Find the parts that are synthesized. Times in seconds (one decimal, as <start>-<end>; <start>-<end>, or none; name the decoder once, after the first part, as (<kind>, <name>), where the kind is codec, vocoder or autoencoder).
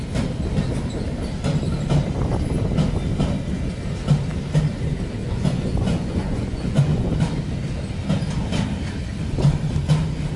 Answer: 5.2-7.1 (vocoder, Vocos)